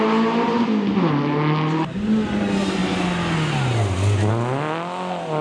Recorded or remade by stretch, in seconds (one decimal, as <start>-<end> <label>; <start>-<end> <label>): 0.0-5.4 recorded